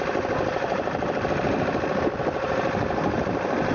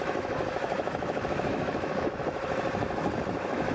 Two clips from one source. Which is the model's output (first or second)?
second